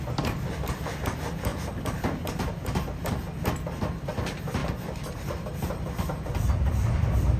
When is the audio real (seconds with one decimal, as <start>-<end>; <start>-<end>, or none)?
1.5-3.5; 4.6-6.7